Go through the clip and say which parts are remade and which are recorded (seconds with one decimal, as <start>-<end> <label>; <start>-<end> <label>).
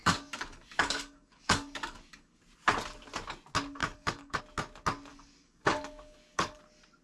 0.0-2.4 remade; 2.4-3.8 recorded; 3.8-4.4 remade; 4.4-5.1 recorded; 5.1-6.6 remade; 6.6-7.0 recorded